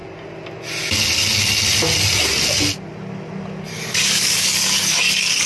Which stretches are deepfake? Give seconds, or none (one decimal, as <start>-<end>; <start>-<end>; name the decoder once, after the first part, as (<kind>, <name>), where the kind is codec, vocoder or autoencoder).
3.7-5.5 (codec, DAC)